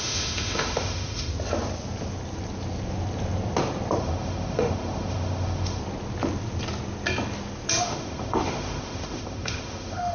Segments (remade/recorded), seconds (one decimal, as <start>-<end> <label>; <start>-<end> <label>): 0.0-1.3 remade; 1.3-4.0 recorded; 4.0-5.8 remade; 5.8-7.8 recorded; 7.8-10.1 remade